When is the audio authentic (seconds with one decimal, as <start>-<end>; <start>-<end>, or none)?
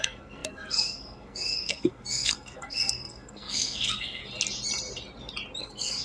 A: 4.2-5.6